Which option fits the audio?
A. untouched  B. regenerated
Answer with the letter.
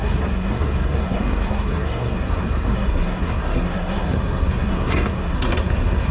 B